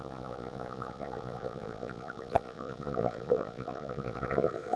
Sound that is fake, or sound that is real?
fake